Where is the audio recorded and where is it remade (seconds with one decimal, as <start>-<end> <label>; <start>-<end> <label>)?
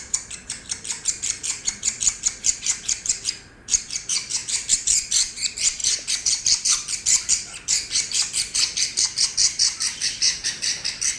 0.0-11.2 remade